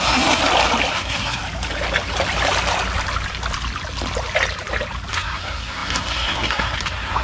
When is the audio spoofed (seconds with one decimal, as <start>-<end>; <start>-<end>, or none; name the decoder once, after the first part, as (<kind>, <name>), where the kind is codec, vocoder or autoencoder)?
0.0-0.4 (codec, SNAC); 0.9-1.4; 5.1-7.2